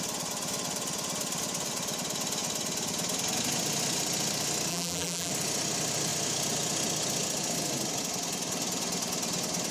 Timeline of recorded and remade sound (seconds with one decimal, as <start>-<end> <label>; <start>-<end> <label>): 0.0-4.7 recorded; 4.7-5.3 remade; 5.3-9.7 recorded